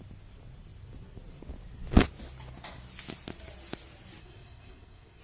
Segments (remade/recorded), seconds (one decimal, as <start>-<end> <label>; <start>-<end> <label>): 0.0-4.2 recorded; 4.2-5.2 remade